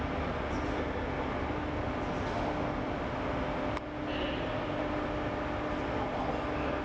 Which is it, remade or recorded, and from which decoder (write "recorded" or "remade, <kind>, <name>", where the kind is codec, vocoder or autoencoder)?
recorded